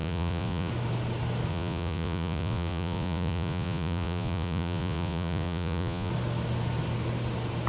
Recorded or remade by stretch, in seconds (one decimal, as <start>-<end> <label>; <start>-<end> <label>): 0.0-0.7 remade; 0.7-1.5 recorded; 1.5-6.1 remade; 6.1-7.7 recorded